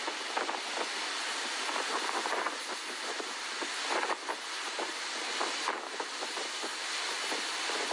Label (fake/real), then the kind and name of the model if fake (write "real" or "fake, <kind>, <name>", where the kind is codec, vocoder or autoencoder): real